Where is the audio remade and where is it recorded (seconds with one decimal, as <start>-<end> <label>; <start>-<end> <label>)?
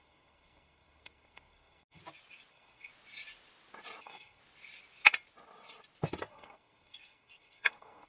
0.0-2.0 remade; 2.0-2.5 recorded; 2.5-2.9 remade; 2.9-4.0 recorded; 4.0-4.4 remade; 4.4-6.3 recorded; 6.3-8.1 remade